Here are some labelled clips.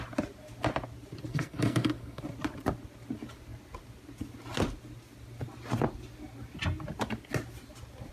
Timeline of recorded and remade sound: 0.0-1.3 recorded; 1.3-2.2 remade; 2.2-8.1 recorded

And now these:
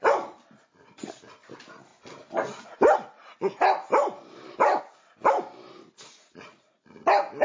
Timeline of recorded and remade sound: 0.0-7.4 recorded

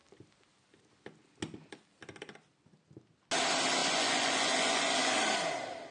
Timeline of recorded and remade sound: 0.0-3.8 recorded; 3.8-5.1 remade; 5.1-5.9 recorded

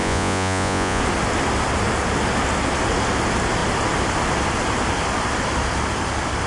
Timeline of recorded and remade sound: 0.0-1.0 remade; 1.0-6.5 recorded

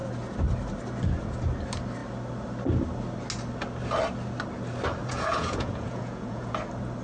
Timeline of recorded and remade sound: 0.0-5.0 recorded; 5.0-6.5 remade; 6.5-7.0 recorded